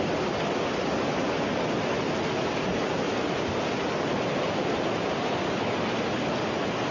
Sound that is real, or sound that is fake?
real